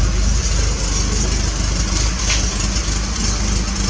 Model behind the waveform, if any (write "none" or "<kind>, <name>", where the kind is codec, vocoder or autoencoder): none